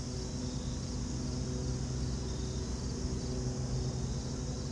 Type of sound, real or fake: real